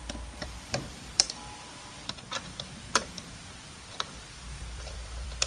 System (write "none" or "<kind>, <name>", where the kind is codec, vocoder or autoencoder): vocoder, BigVGAN v2